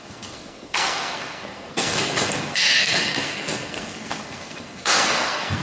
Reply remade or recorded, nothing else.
remade